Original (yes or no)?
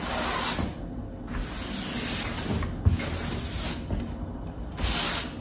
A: yes